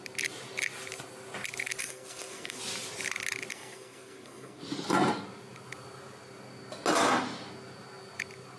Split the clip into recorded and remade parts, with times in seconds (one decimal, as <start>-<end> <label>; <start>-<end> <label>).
0.0-1.8 recorded; 1.8-2.6 remade; 2.6-3.5 recorded; 3.5-4.6 remade; 4.6-8.6 recorded